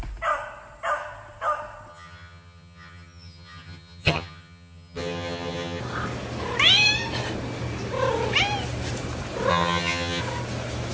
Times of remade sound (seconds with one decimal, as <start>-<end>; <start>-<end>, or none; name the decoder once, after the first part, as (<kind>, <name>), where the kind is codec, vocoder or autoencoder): 1.9-5.8 (vocoder, HiFi-GAN); 9.5-10.2